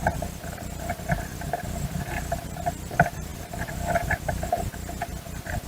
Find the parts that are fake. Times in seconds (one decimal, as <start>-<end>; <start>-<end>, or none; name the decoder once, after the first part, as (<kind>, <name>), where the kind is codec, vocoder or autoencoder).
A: none